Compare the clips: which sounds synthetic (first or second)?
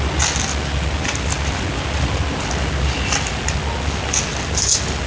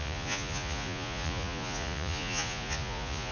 second